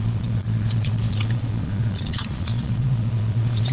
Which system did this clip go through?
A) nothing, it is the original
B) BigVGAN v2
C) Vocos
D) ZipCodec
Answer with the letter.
C